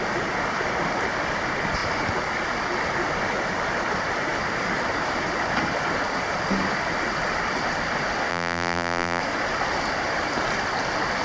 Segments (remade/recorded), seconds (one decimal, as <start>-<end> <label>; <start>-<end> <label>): 0.0-8.3 recorded; 8.3-9.2 remade; 9.2-11.2 recorded